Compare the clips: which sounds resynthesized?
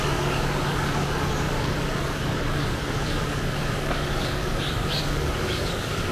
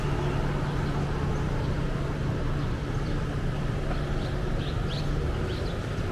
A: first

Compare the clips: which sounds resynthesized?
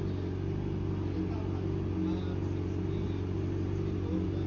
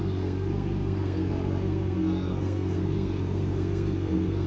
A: second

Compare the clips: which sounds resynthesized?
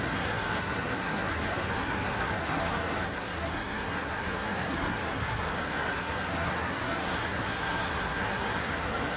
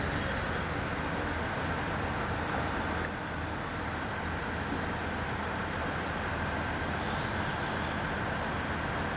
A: first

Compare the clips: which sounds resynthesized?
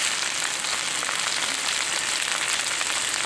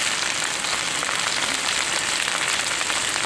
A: second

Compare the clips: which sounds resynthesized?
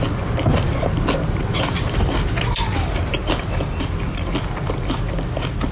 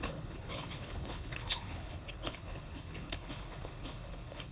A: second